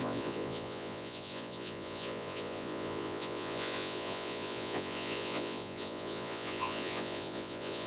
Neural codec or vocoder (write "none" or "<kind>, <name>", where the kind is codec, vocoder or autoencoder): vocoder, Vocos